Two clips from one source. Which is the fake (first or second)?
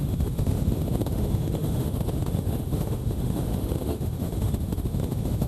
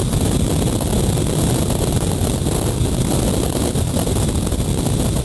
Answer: first